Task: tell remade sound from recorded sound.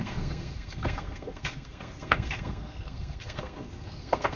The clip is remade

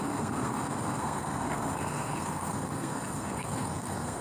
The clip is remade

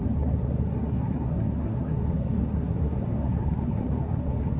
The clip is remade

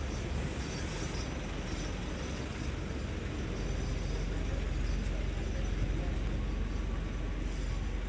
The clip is recorded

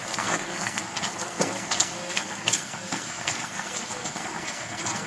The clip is remade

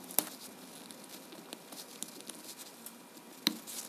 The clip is recorded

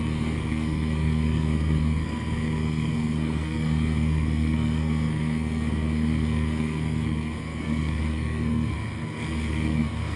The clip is remade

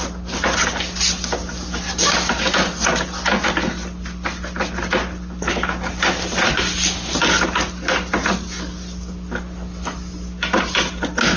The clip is recorded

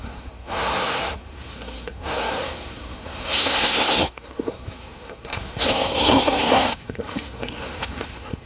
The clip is remade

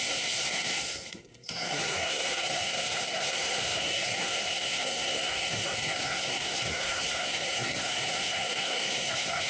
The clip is remade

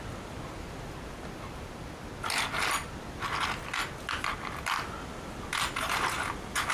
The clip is recorded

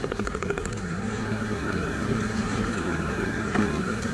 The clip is remade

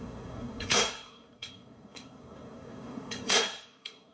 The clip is remade